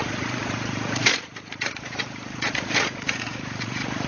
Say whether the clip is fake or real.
fake